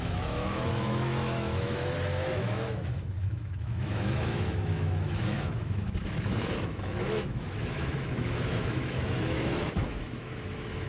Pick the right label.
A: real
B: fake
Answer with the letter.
B